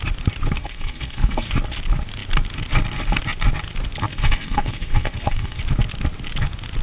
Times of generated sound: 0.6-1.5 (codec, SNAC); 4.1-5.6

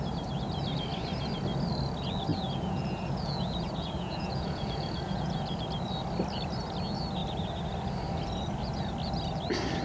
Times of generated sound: 2.3-5.6 (vocoder, Vocos)

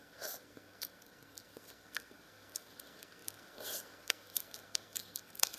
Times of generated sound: 0.0-5.6 (codec, SNAC)

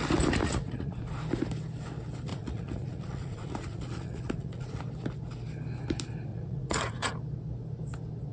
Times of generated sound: 0.4-1.0 (vocoder, Vocos); 2.3-4.8; 6.3-7.1

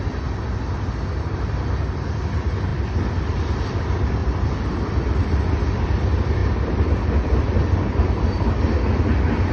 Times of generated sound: 4.2-5.4 (vocoder, BigVGAN v2); 6.4-9.0